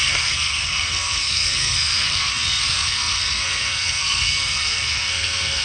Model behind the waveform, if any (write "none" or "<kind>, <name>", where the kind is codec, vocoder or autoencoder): codec, SNAC